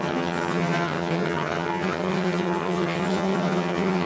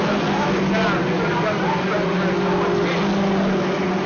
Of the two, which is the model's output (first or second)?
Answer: first